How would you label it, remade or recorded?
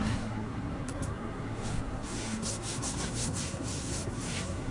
remade